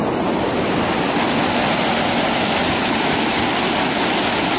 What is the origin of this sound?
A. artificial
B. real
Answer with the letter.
B